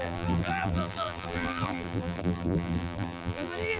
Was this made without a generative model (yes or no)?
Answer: no